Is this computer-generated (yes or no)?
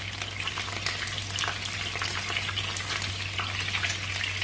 no